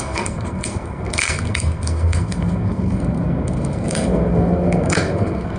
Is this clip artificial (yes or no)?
yes